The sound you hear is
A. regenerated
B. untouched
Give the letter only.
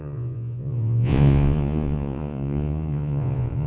A